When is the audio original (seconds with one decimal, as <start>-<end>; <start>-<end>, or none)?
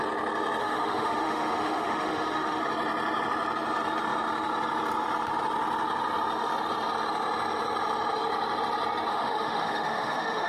0.0-0.6; 2.6-9.1